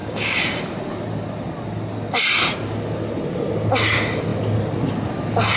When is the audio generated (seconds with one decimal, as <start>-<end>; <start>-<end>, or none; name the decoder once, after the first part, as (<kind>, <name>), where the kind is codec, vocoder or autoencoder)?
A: 0.0-0.6 (codec, DAC)